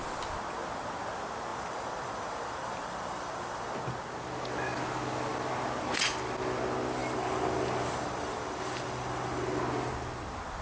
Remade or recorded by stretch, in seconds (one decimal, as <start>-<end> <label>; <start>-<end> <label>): 0.0-1.5 recorded; 1.5-3.7 remade; 3.7-7.0 recorded; 7.0-9.6 remade; 9.6-10.6 recorded

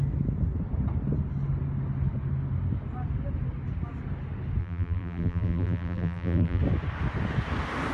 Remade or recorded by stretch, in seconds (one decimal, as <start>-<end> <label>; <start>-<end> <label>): 0.0-4.6 recorded; 4.6-6.6 remade; 6.6-7.9 recorded